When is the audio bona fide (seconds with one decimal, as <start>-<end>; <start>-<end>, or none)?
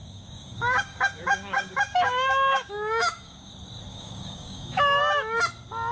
3.5-3.9; 5.0-5.9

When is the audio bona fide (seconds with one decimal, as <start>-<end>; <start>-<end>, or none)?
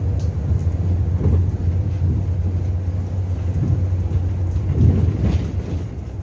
0.0-6.2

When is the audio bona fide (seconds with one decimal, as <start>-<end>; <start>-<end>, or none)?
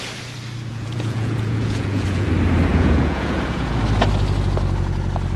0.0-0.7; 2.3-2.7; 3.8-5.4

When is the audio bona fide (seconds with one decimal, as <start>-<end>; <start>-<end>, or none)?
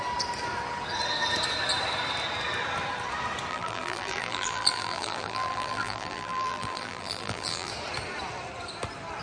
0.0-3.5; 7.7-9.2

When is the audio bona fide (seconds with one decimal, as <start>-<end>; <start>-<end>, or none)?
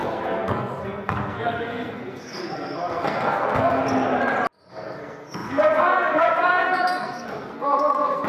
3.8-4.7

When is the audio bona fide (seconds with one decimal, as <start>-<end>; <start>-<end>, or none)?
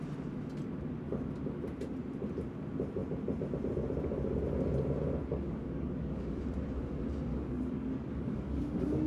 0.0-5.3; 6.4-7.3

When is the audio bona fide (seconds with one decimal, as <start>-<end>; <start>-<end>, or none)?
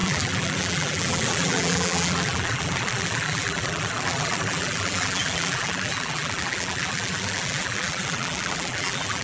none